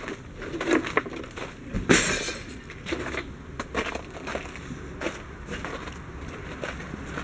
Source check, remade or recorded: recorded